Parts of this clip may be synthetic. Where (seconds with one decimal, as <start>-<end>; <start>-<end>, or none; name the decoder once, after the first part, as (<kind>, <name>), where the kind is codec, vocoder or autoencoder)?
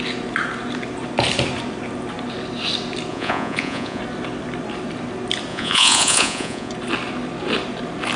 3.1-4.0 (vocoder, Vocos); 5.5-6.7